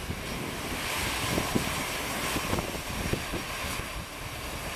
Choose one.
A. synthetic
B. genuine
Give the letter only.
B